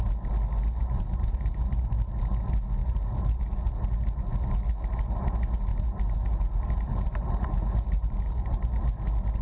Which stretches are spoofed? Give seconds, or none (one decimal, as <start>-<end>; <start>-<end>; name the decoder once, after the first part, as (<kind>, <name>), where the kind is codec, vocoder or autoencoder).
0.8-1.8 (vocoder, BigVGAN v2); 2.8-3.4; 5.7-8.8